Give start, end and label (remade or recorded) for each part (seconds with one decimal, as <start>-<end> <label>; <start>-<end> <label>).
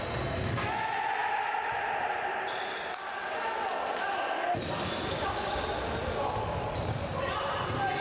0.0-8.0 recorded